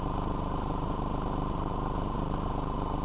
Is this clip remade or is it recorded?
recorded